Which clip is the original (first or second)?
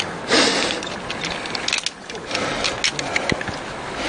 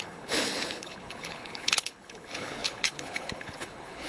first